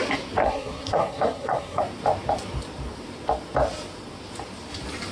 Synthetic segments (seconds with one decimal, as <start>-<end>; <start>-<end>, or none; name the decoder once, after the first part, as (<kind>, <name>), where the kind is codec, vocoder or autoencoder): 0.4-1.8 (codec, SNAC)